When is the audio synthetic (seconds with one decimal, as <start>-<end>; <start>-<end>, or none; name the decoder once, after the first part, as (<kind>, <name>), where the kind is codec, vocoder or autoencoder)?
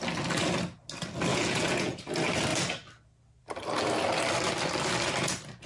1.3-2.0 (vocoder, Vocos)